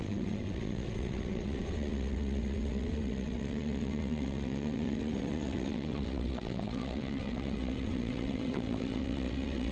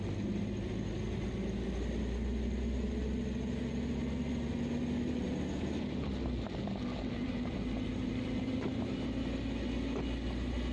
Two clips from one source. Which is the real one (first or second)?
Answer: second